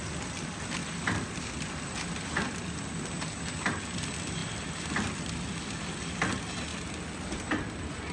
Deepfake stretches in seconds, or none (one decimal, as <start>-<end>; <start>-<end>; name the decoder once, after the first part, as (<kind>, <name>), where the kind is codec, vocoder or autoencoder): none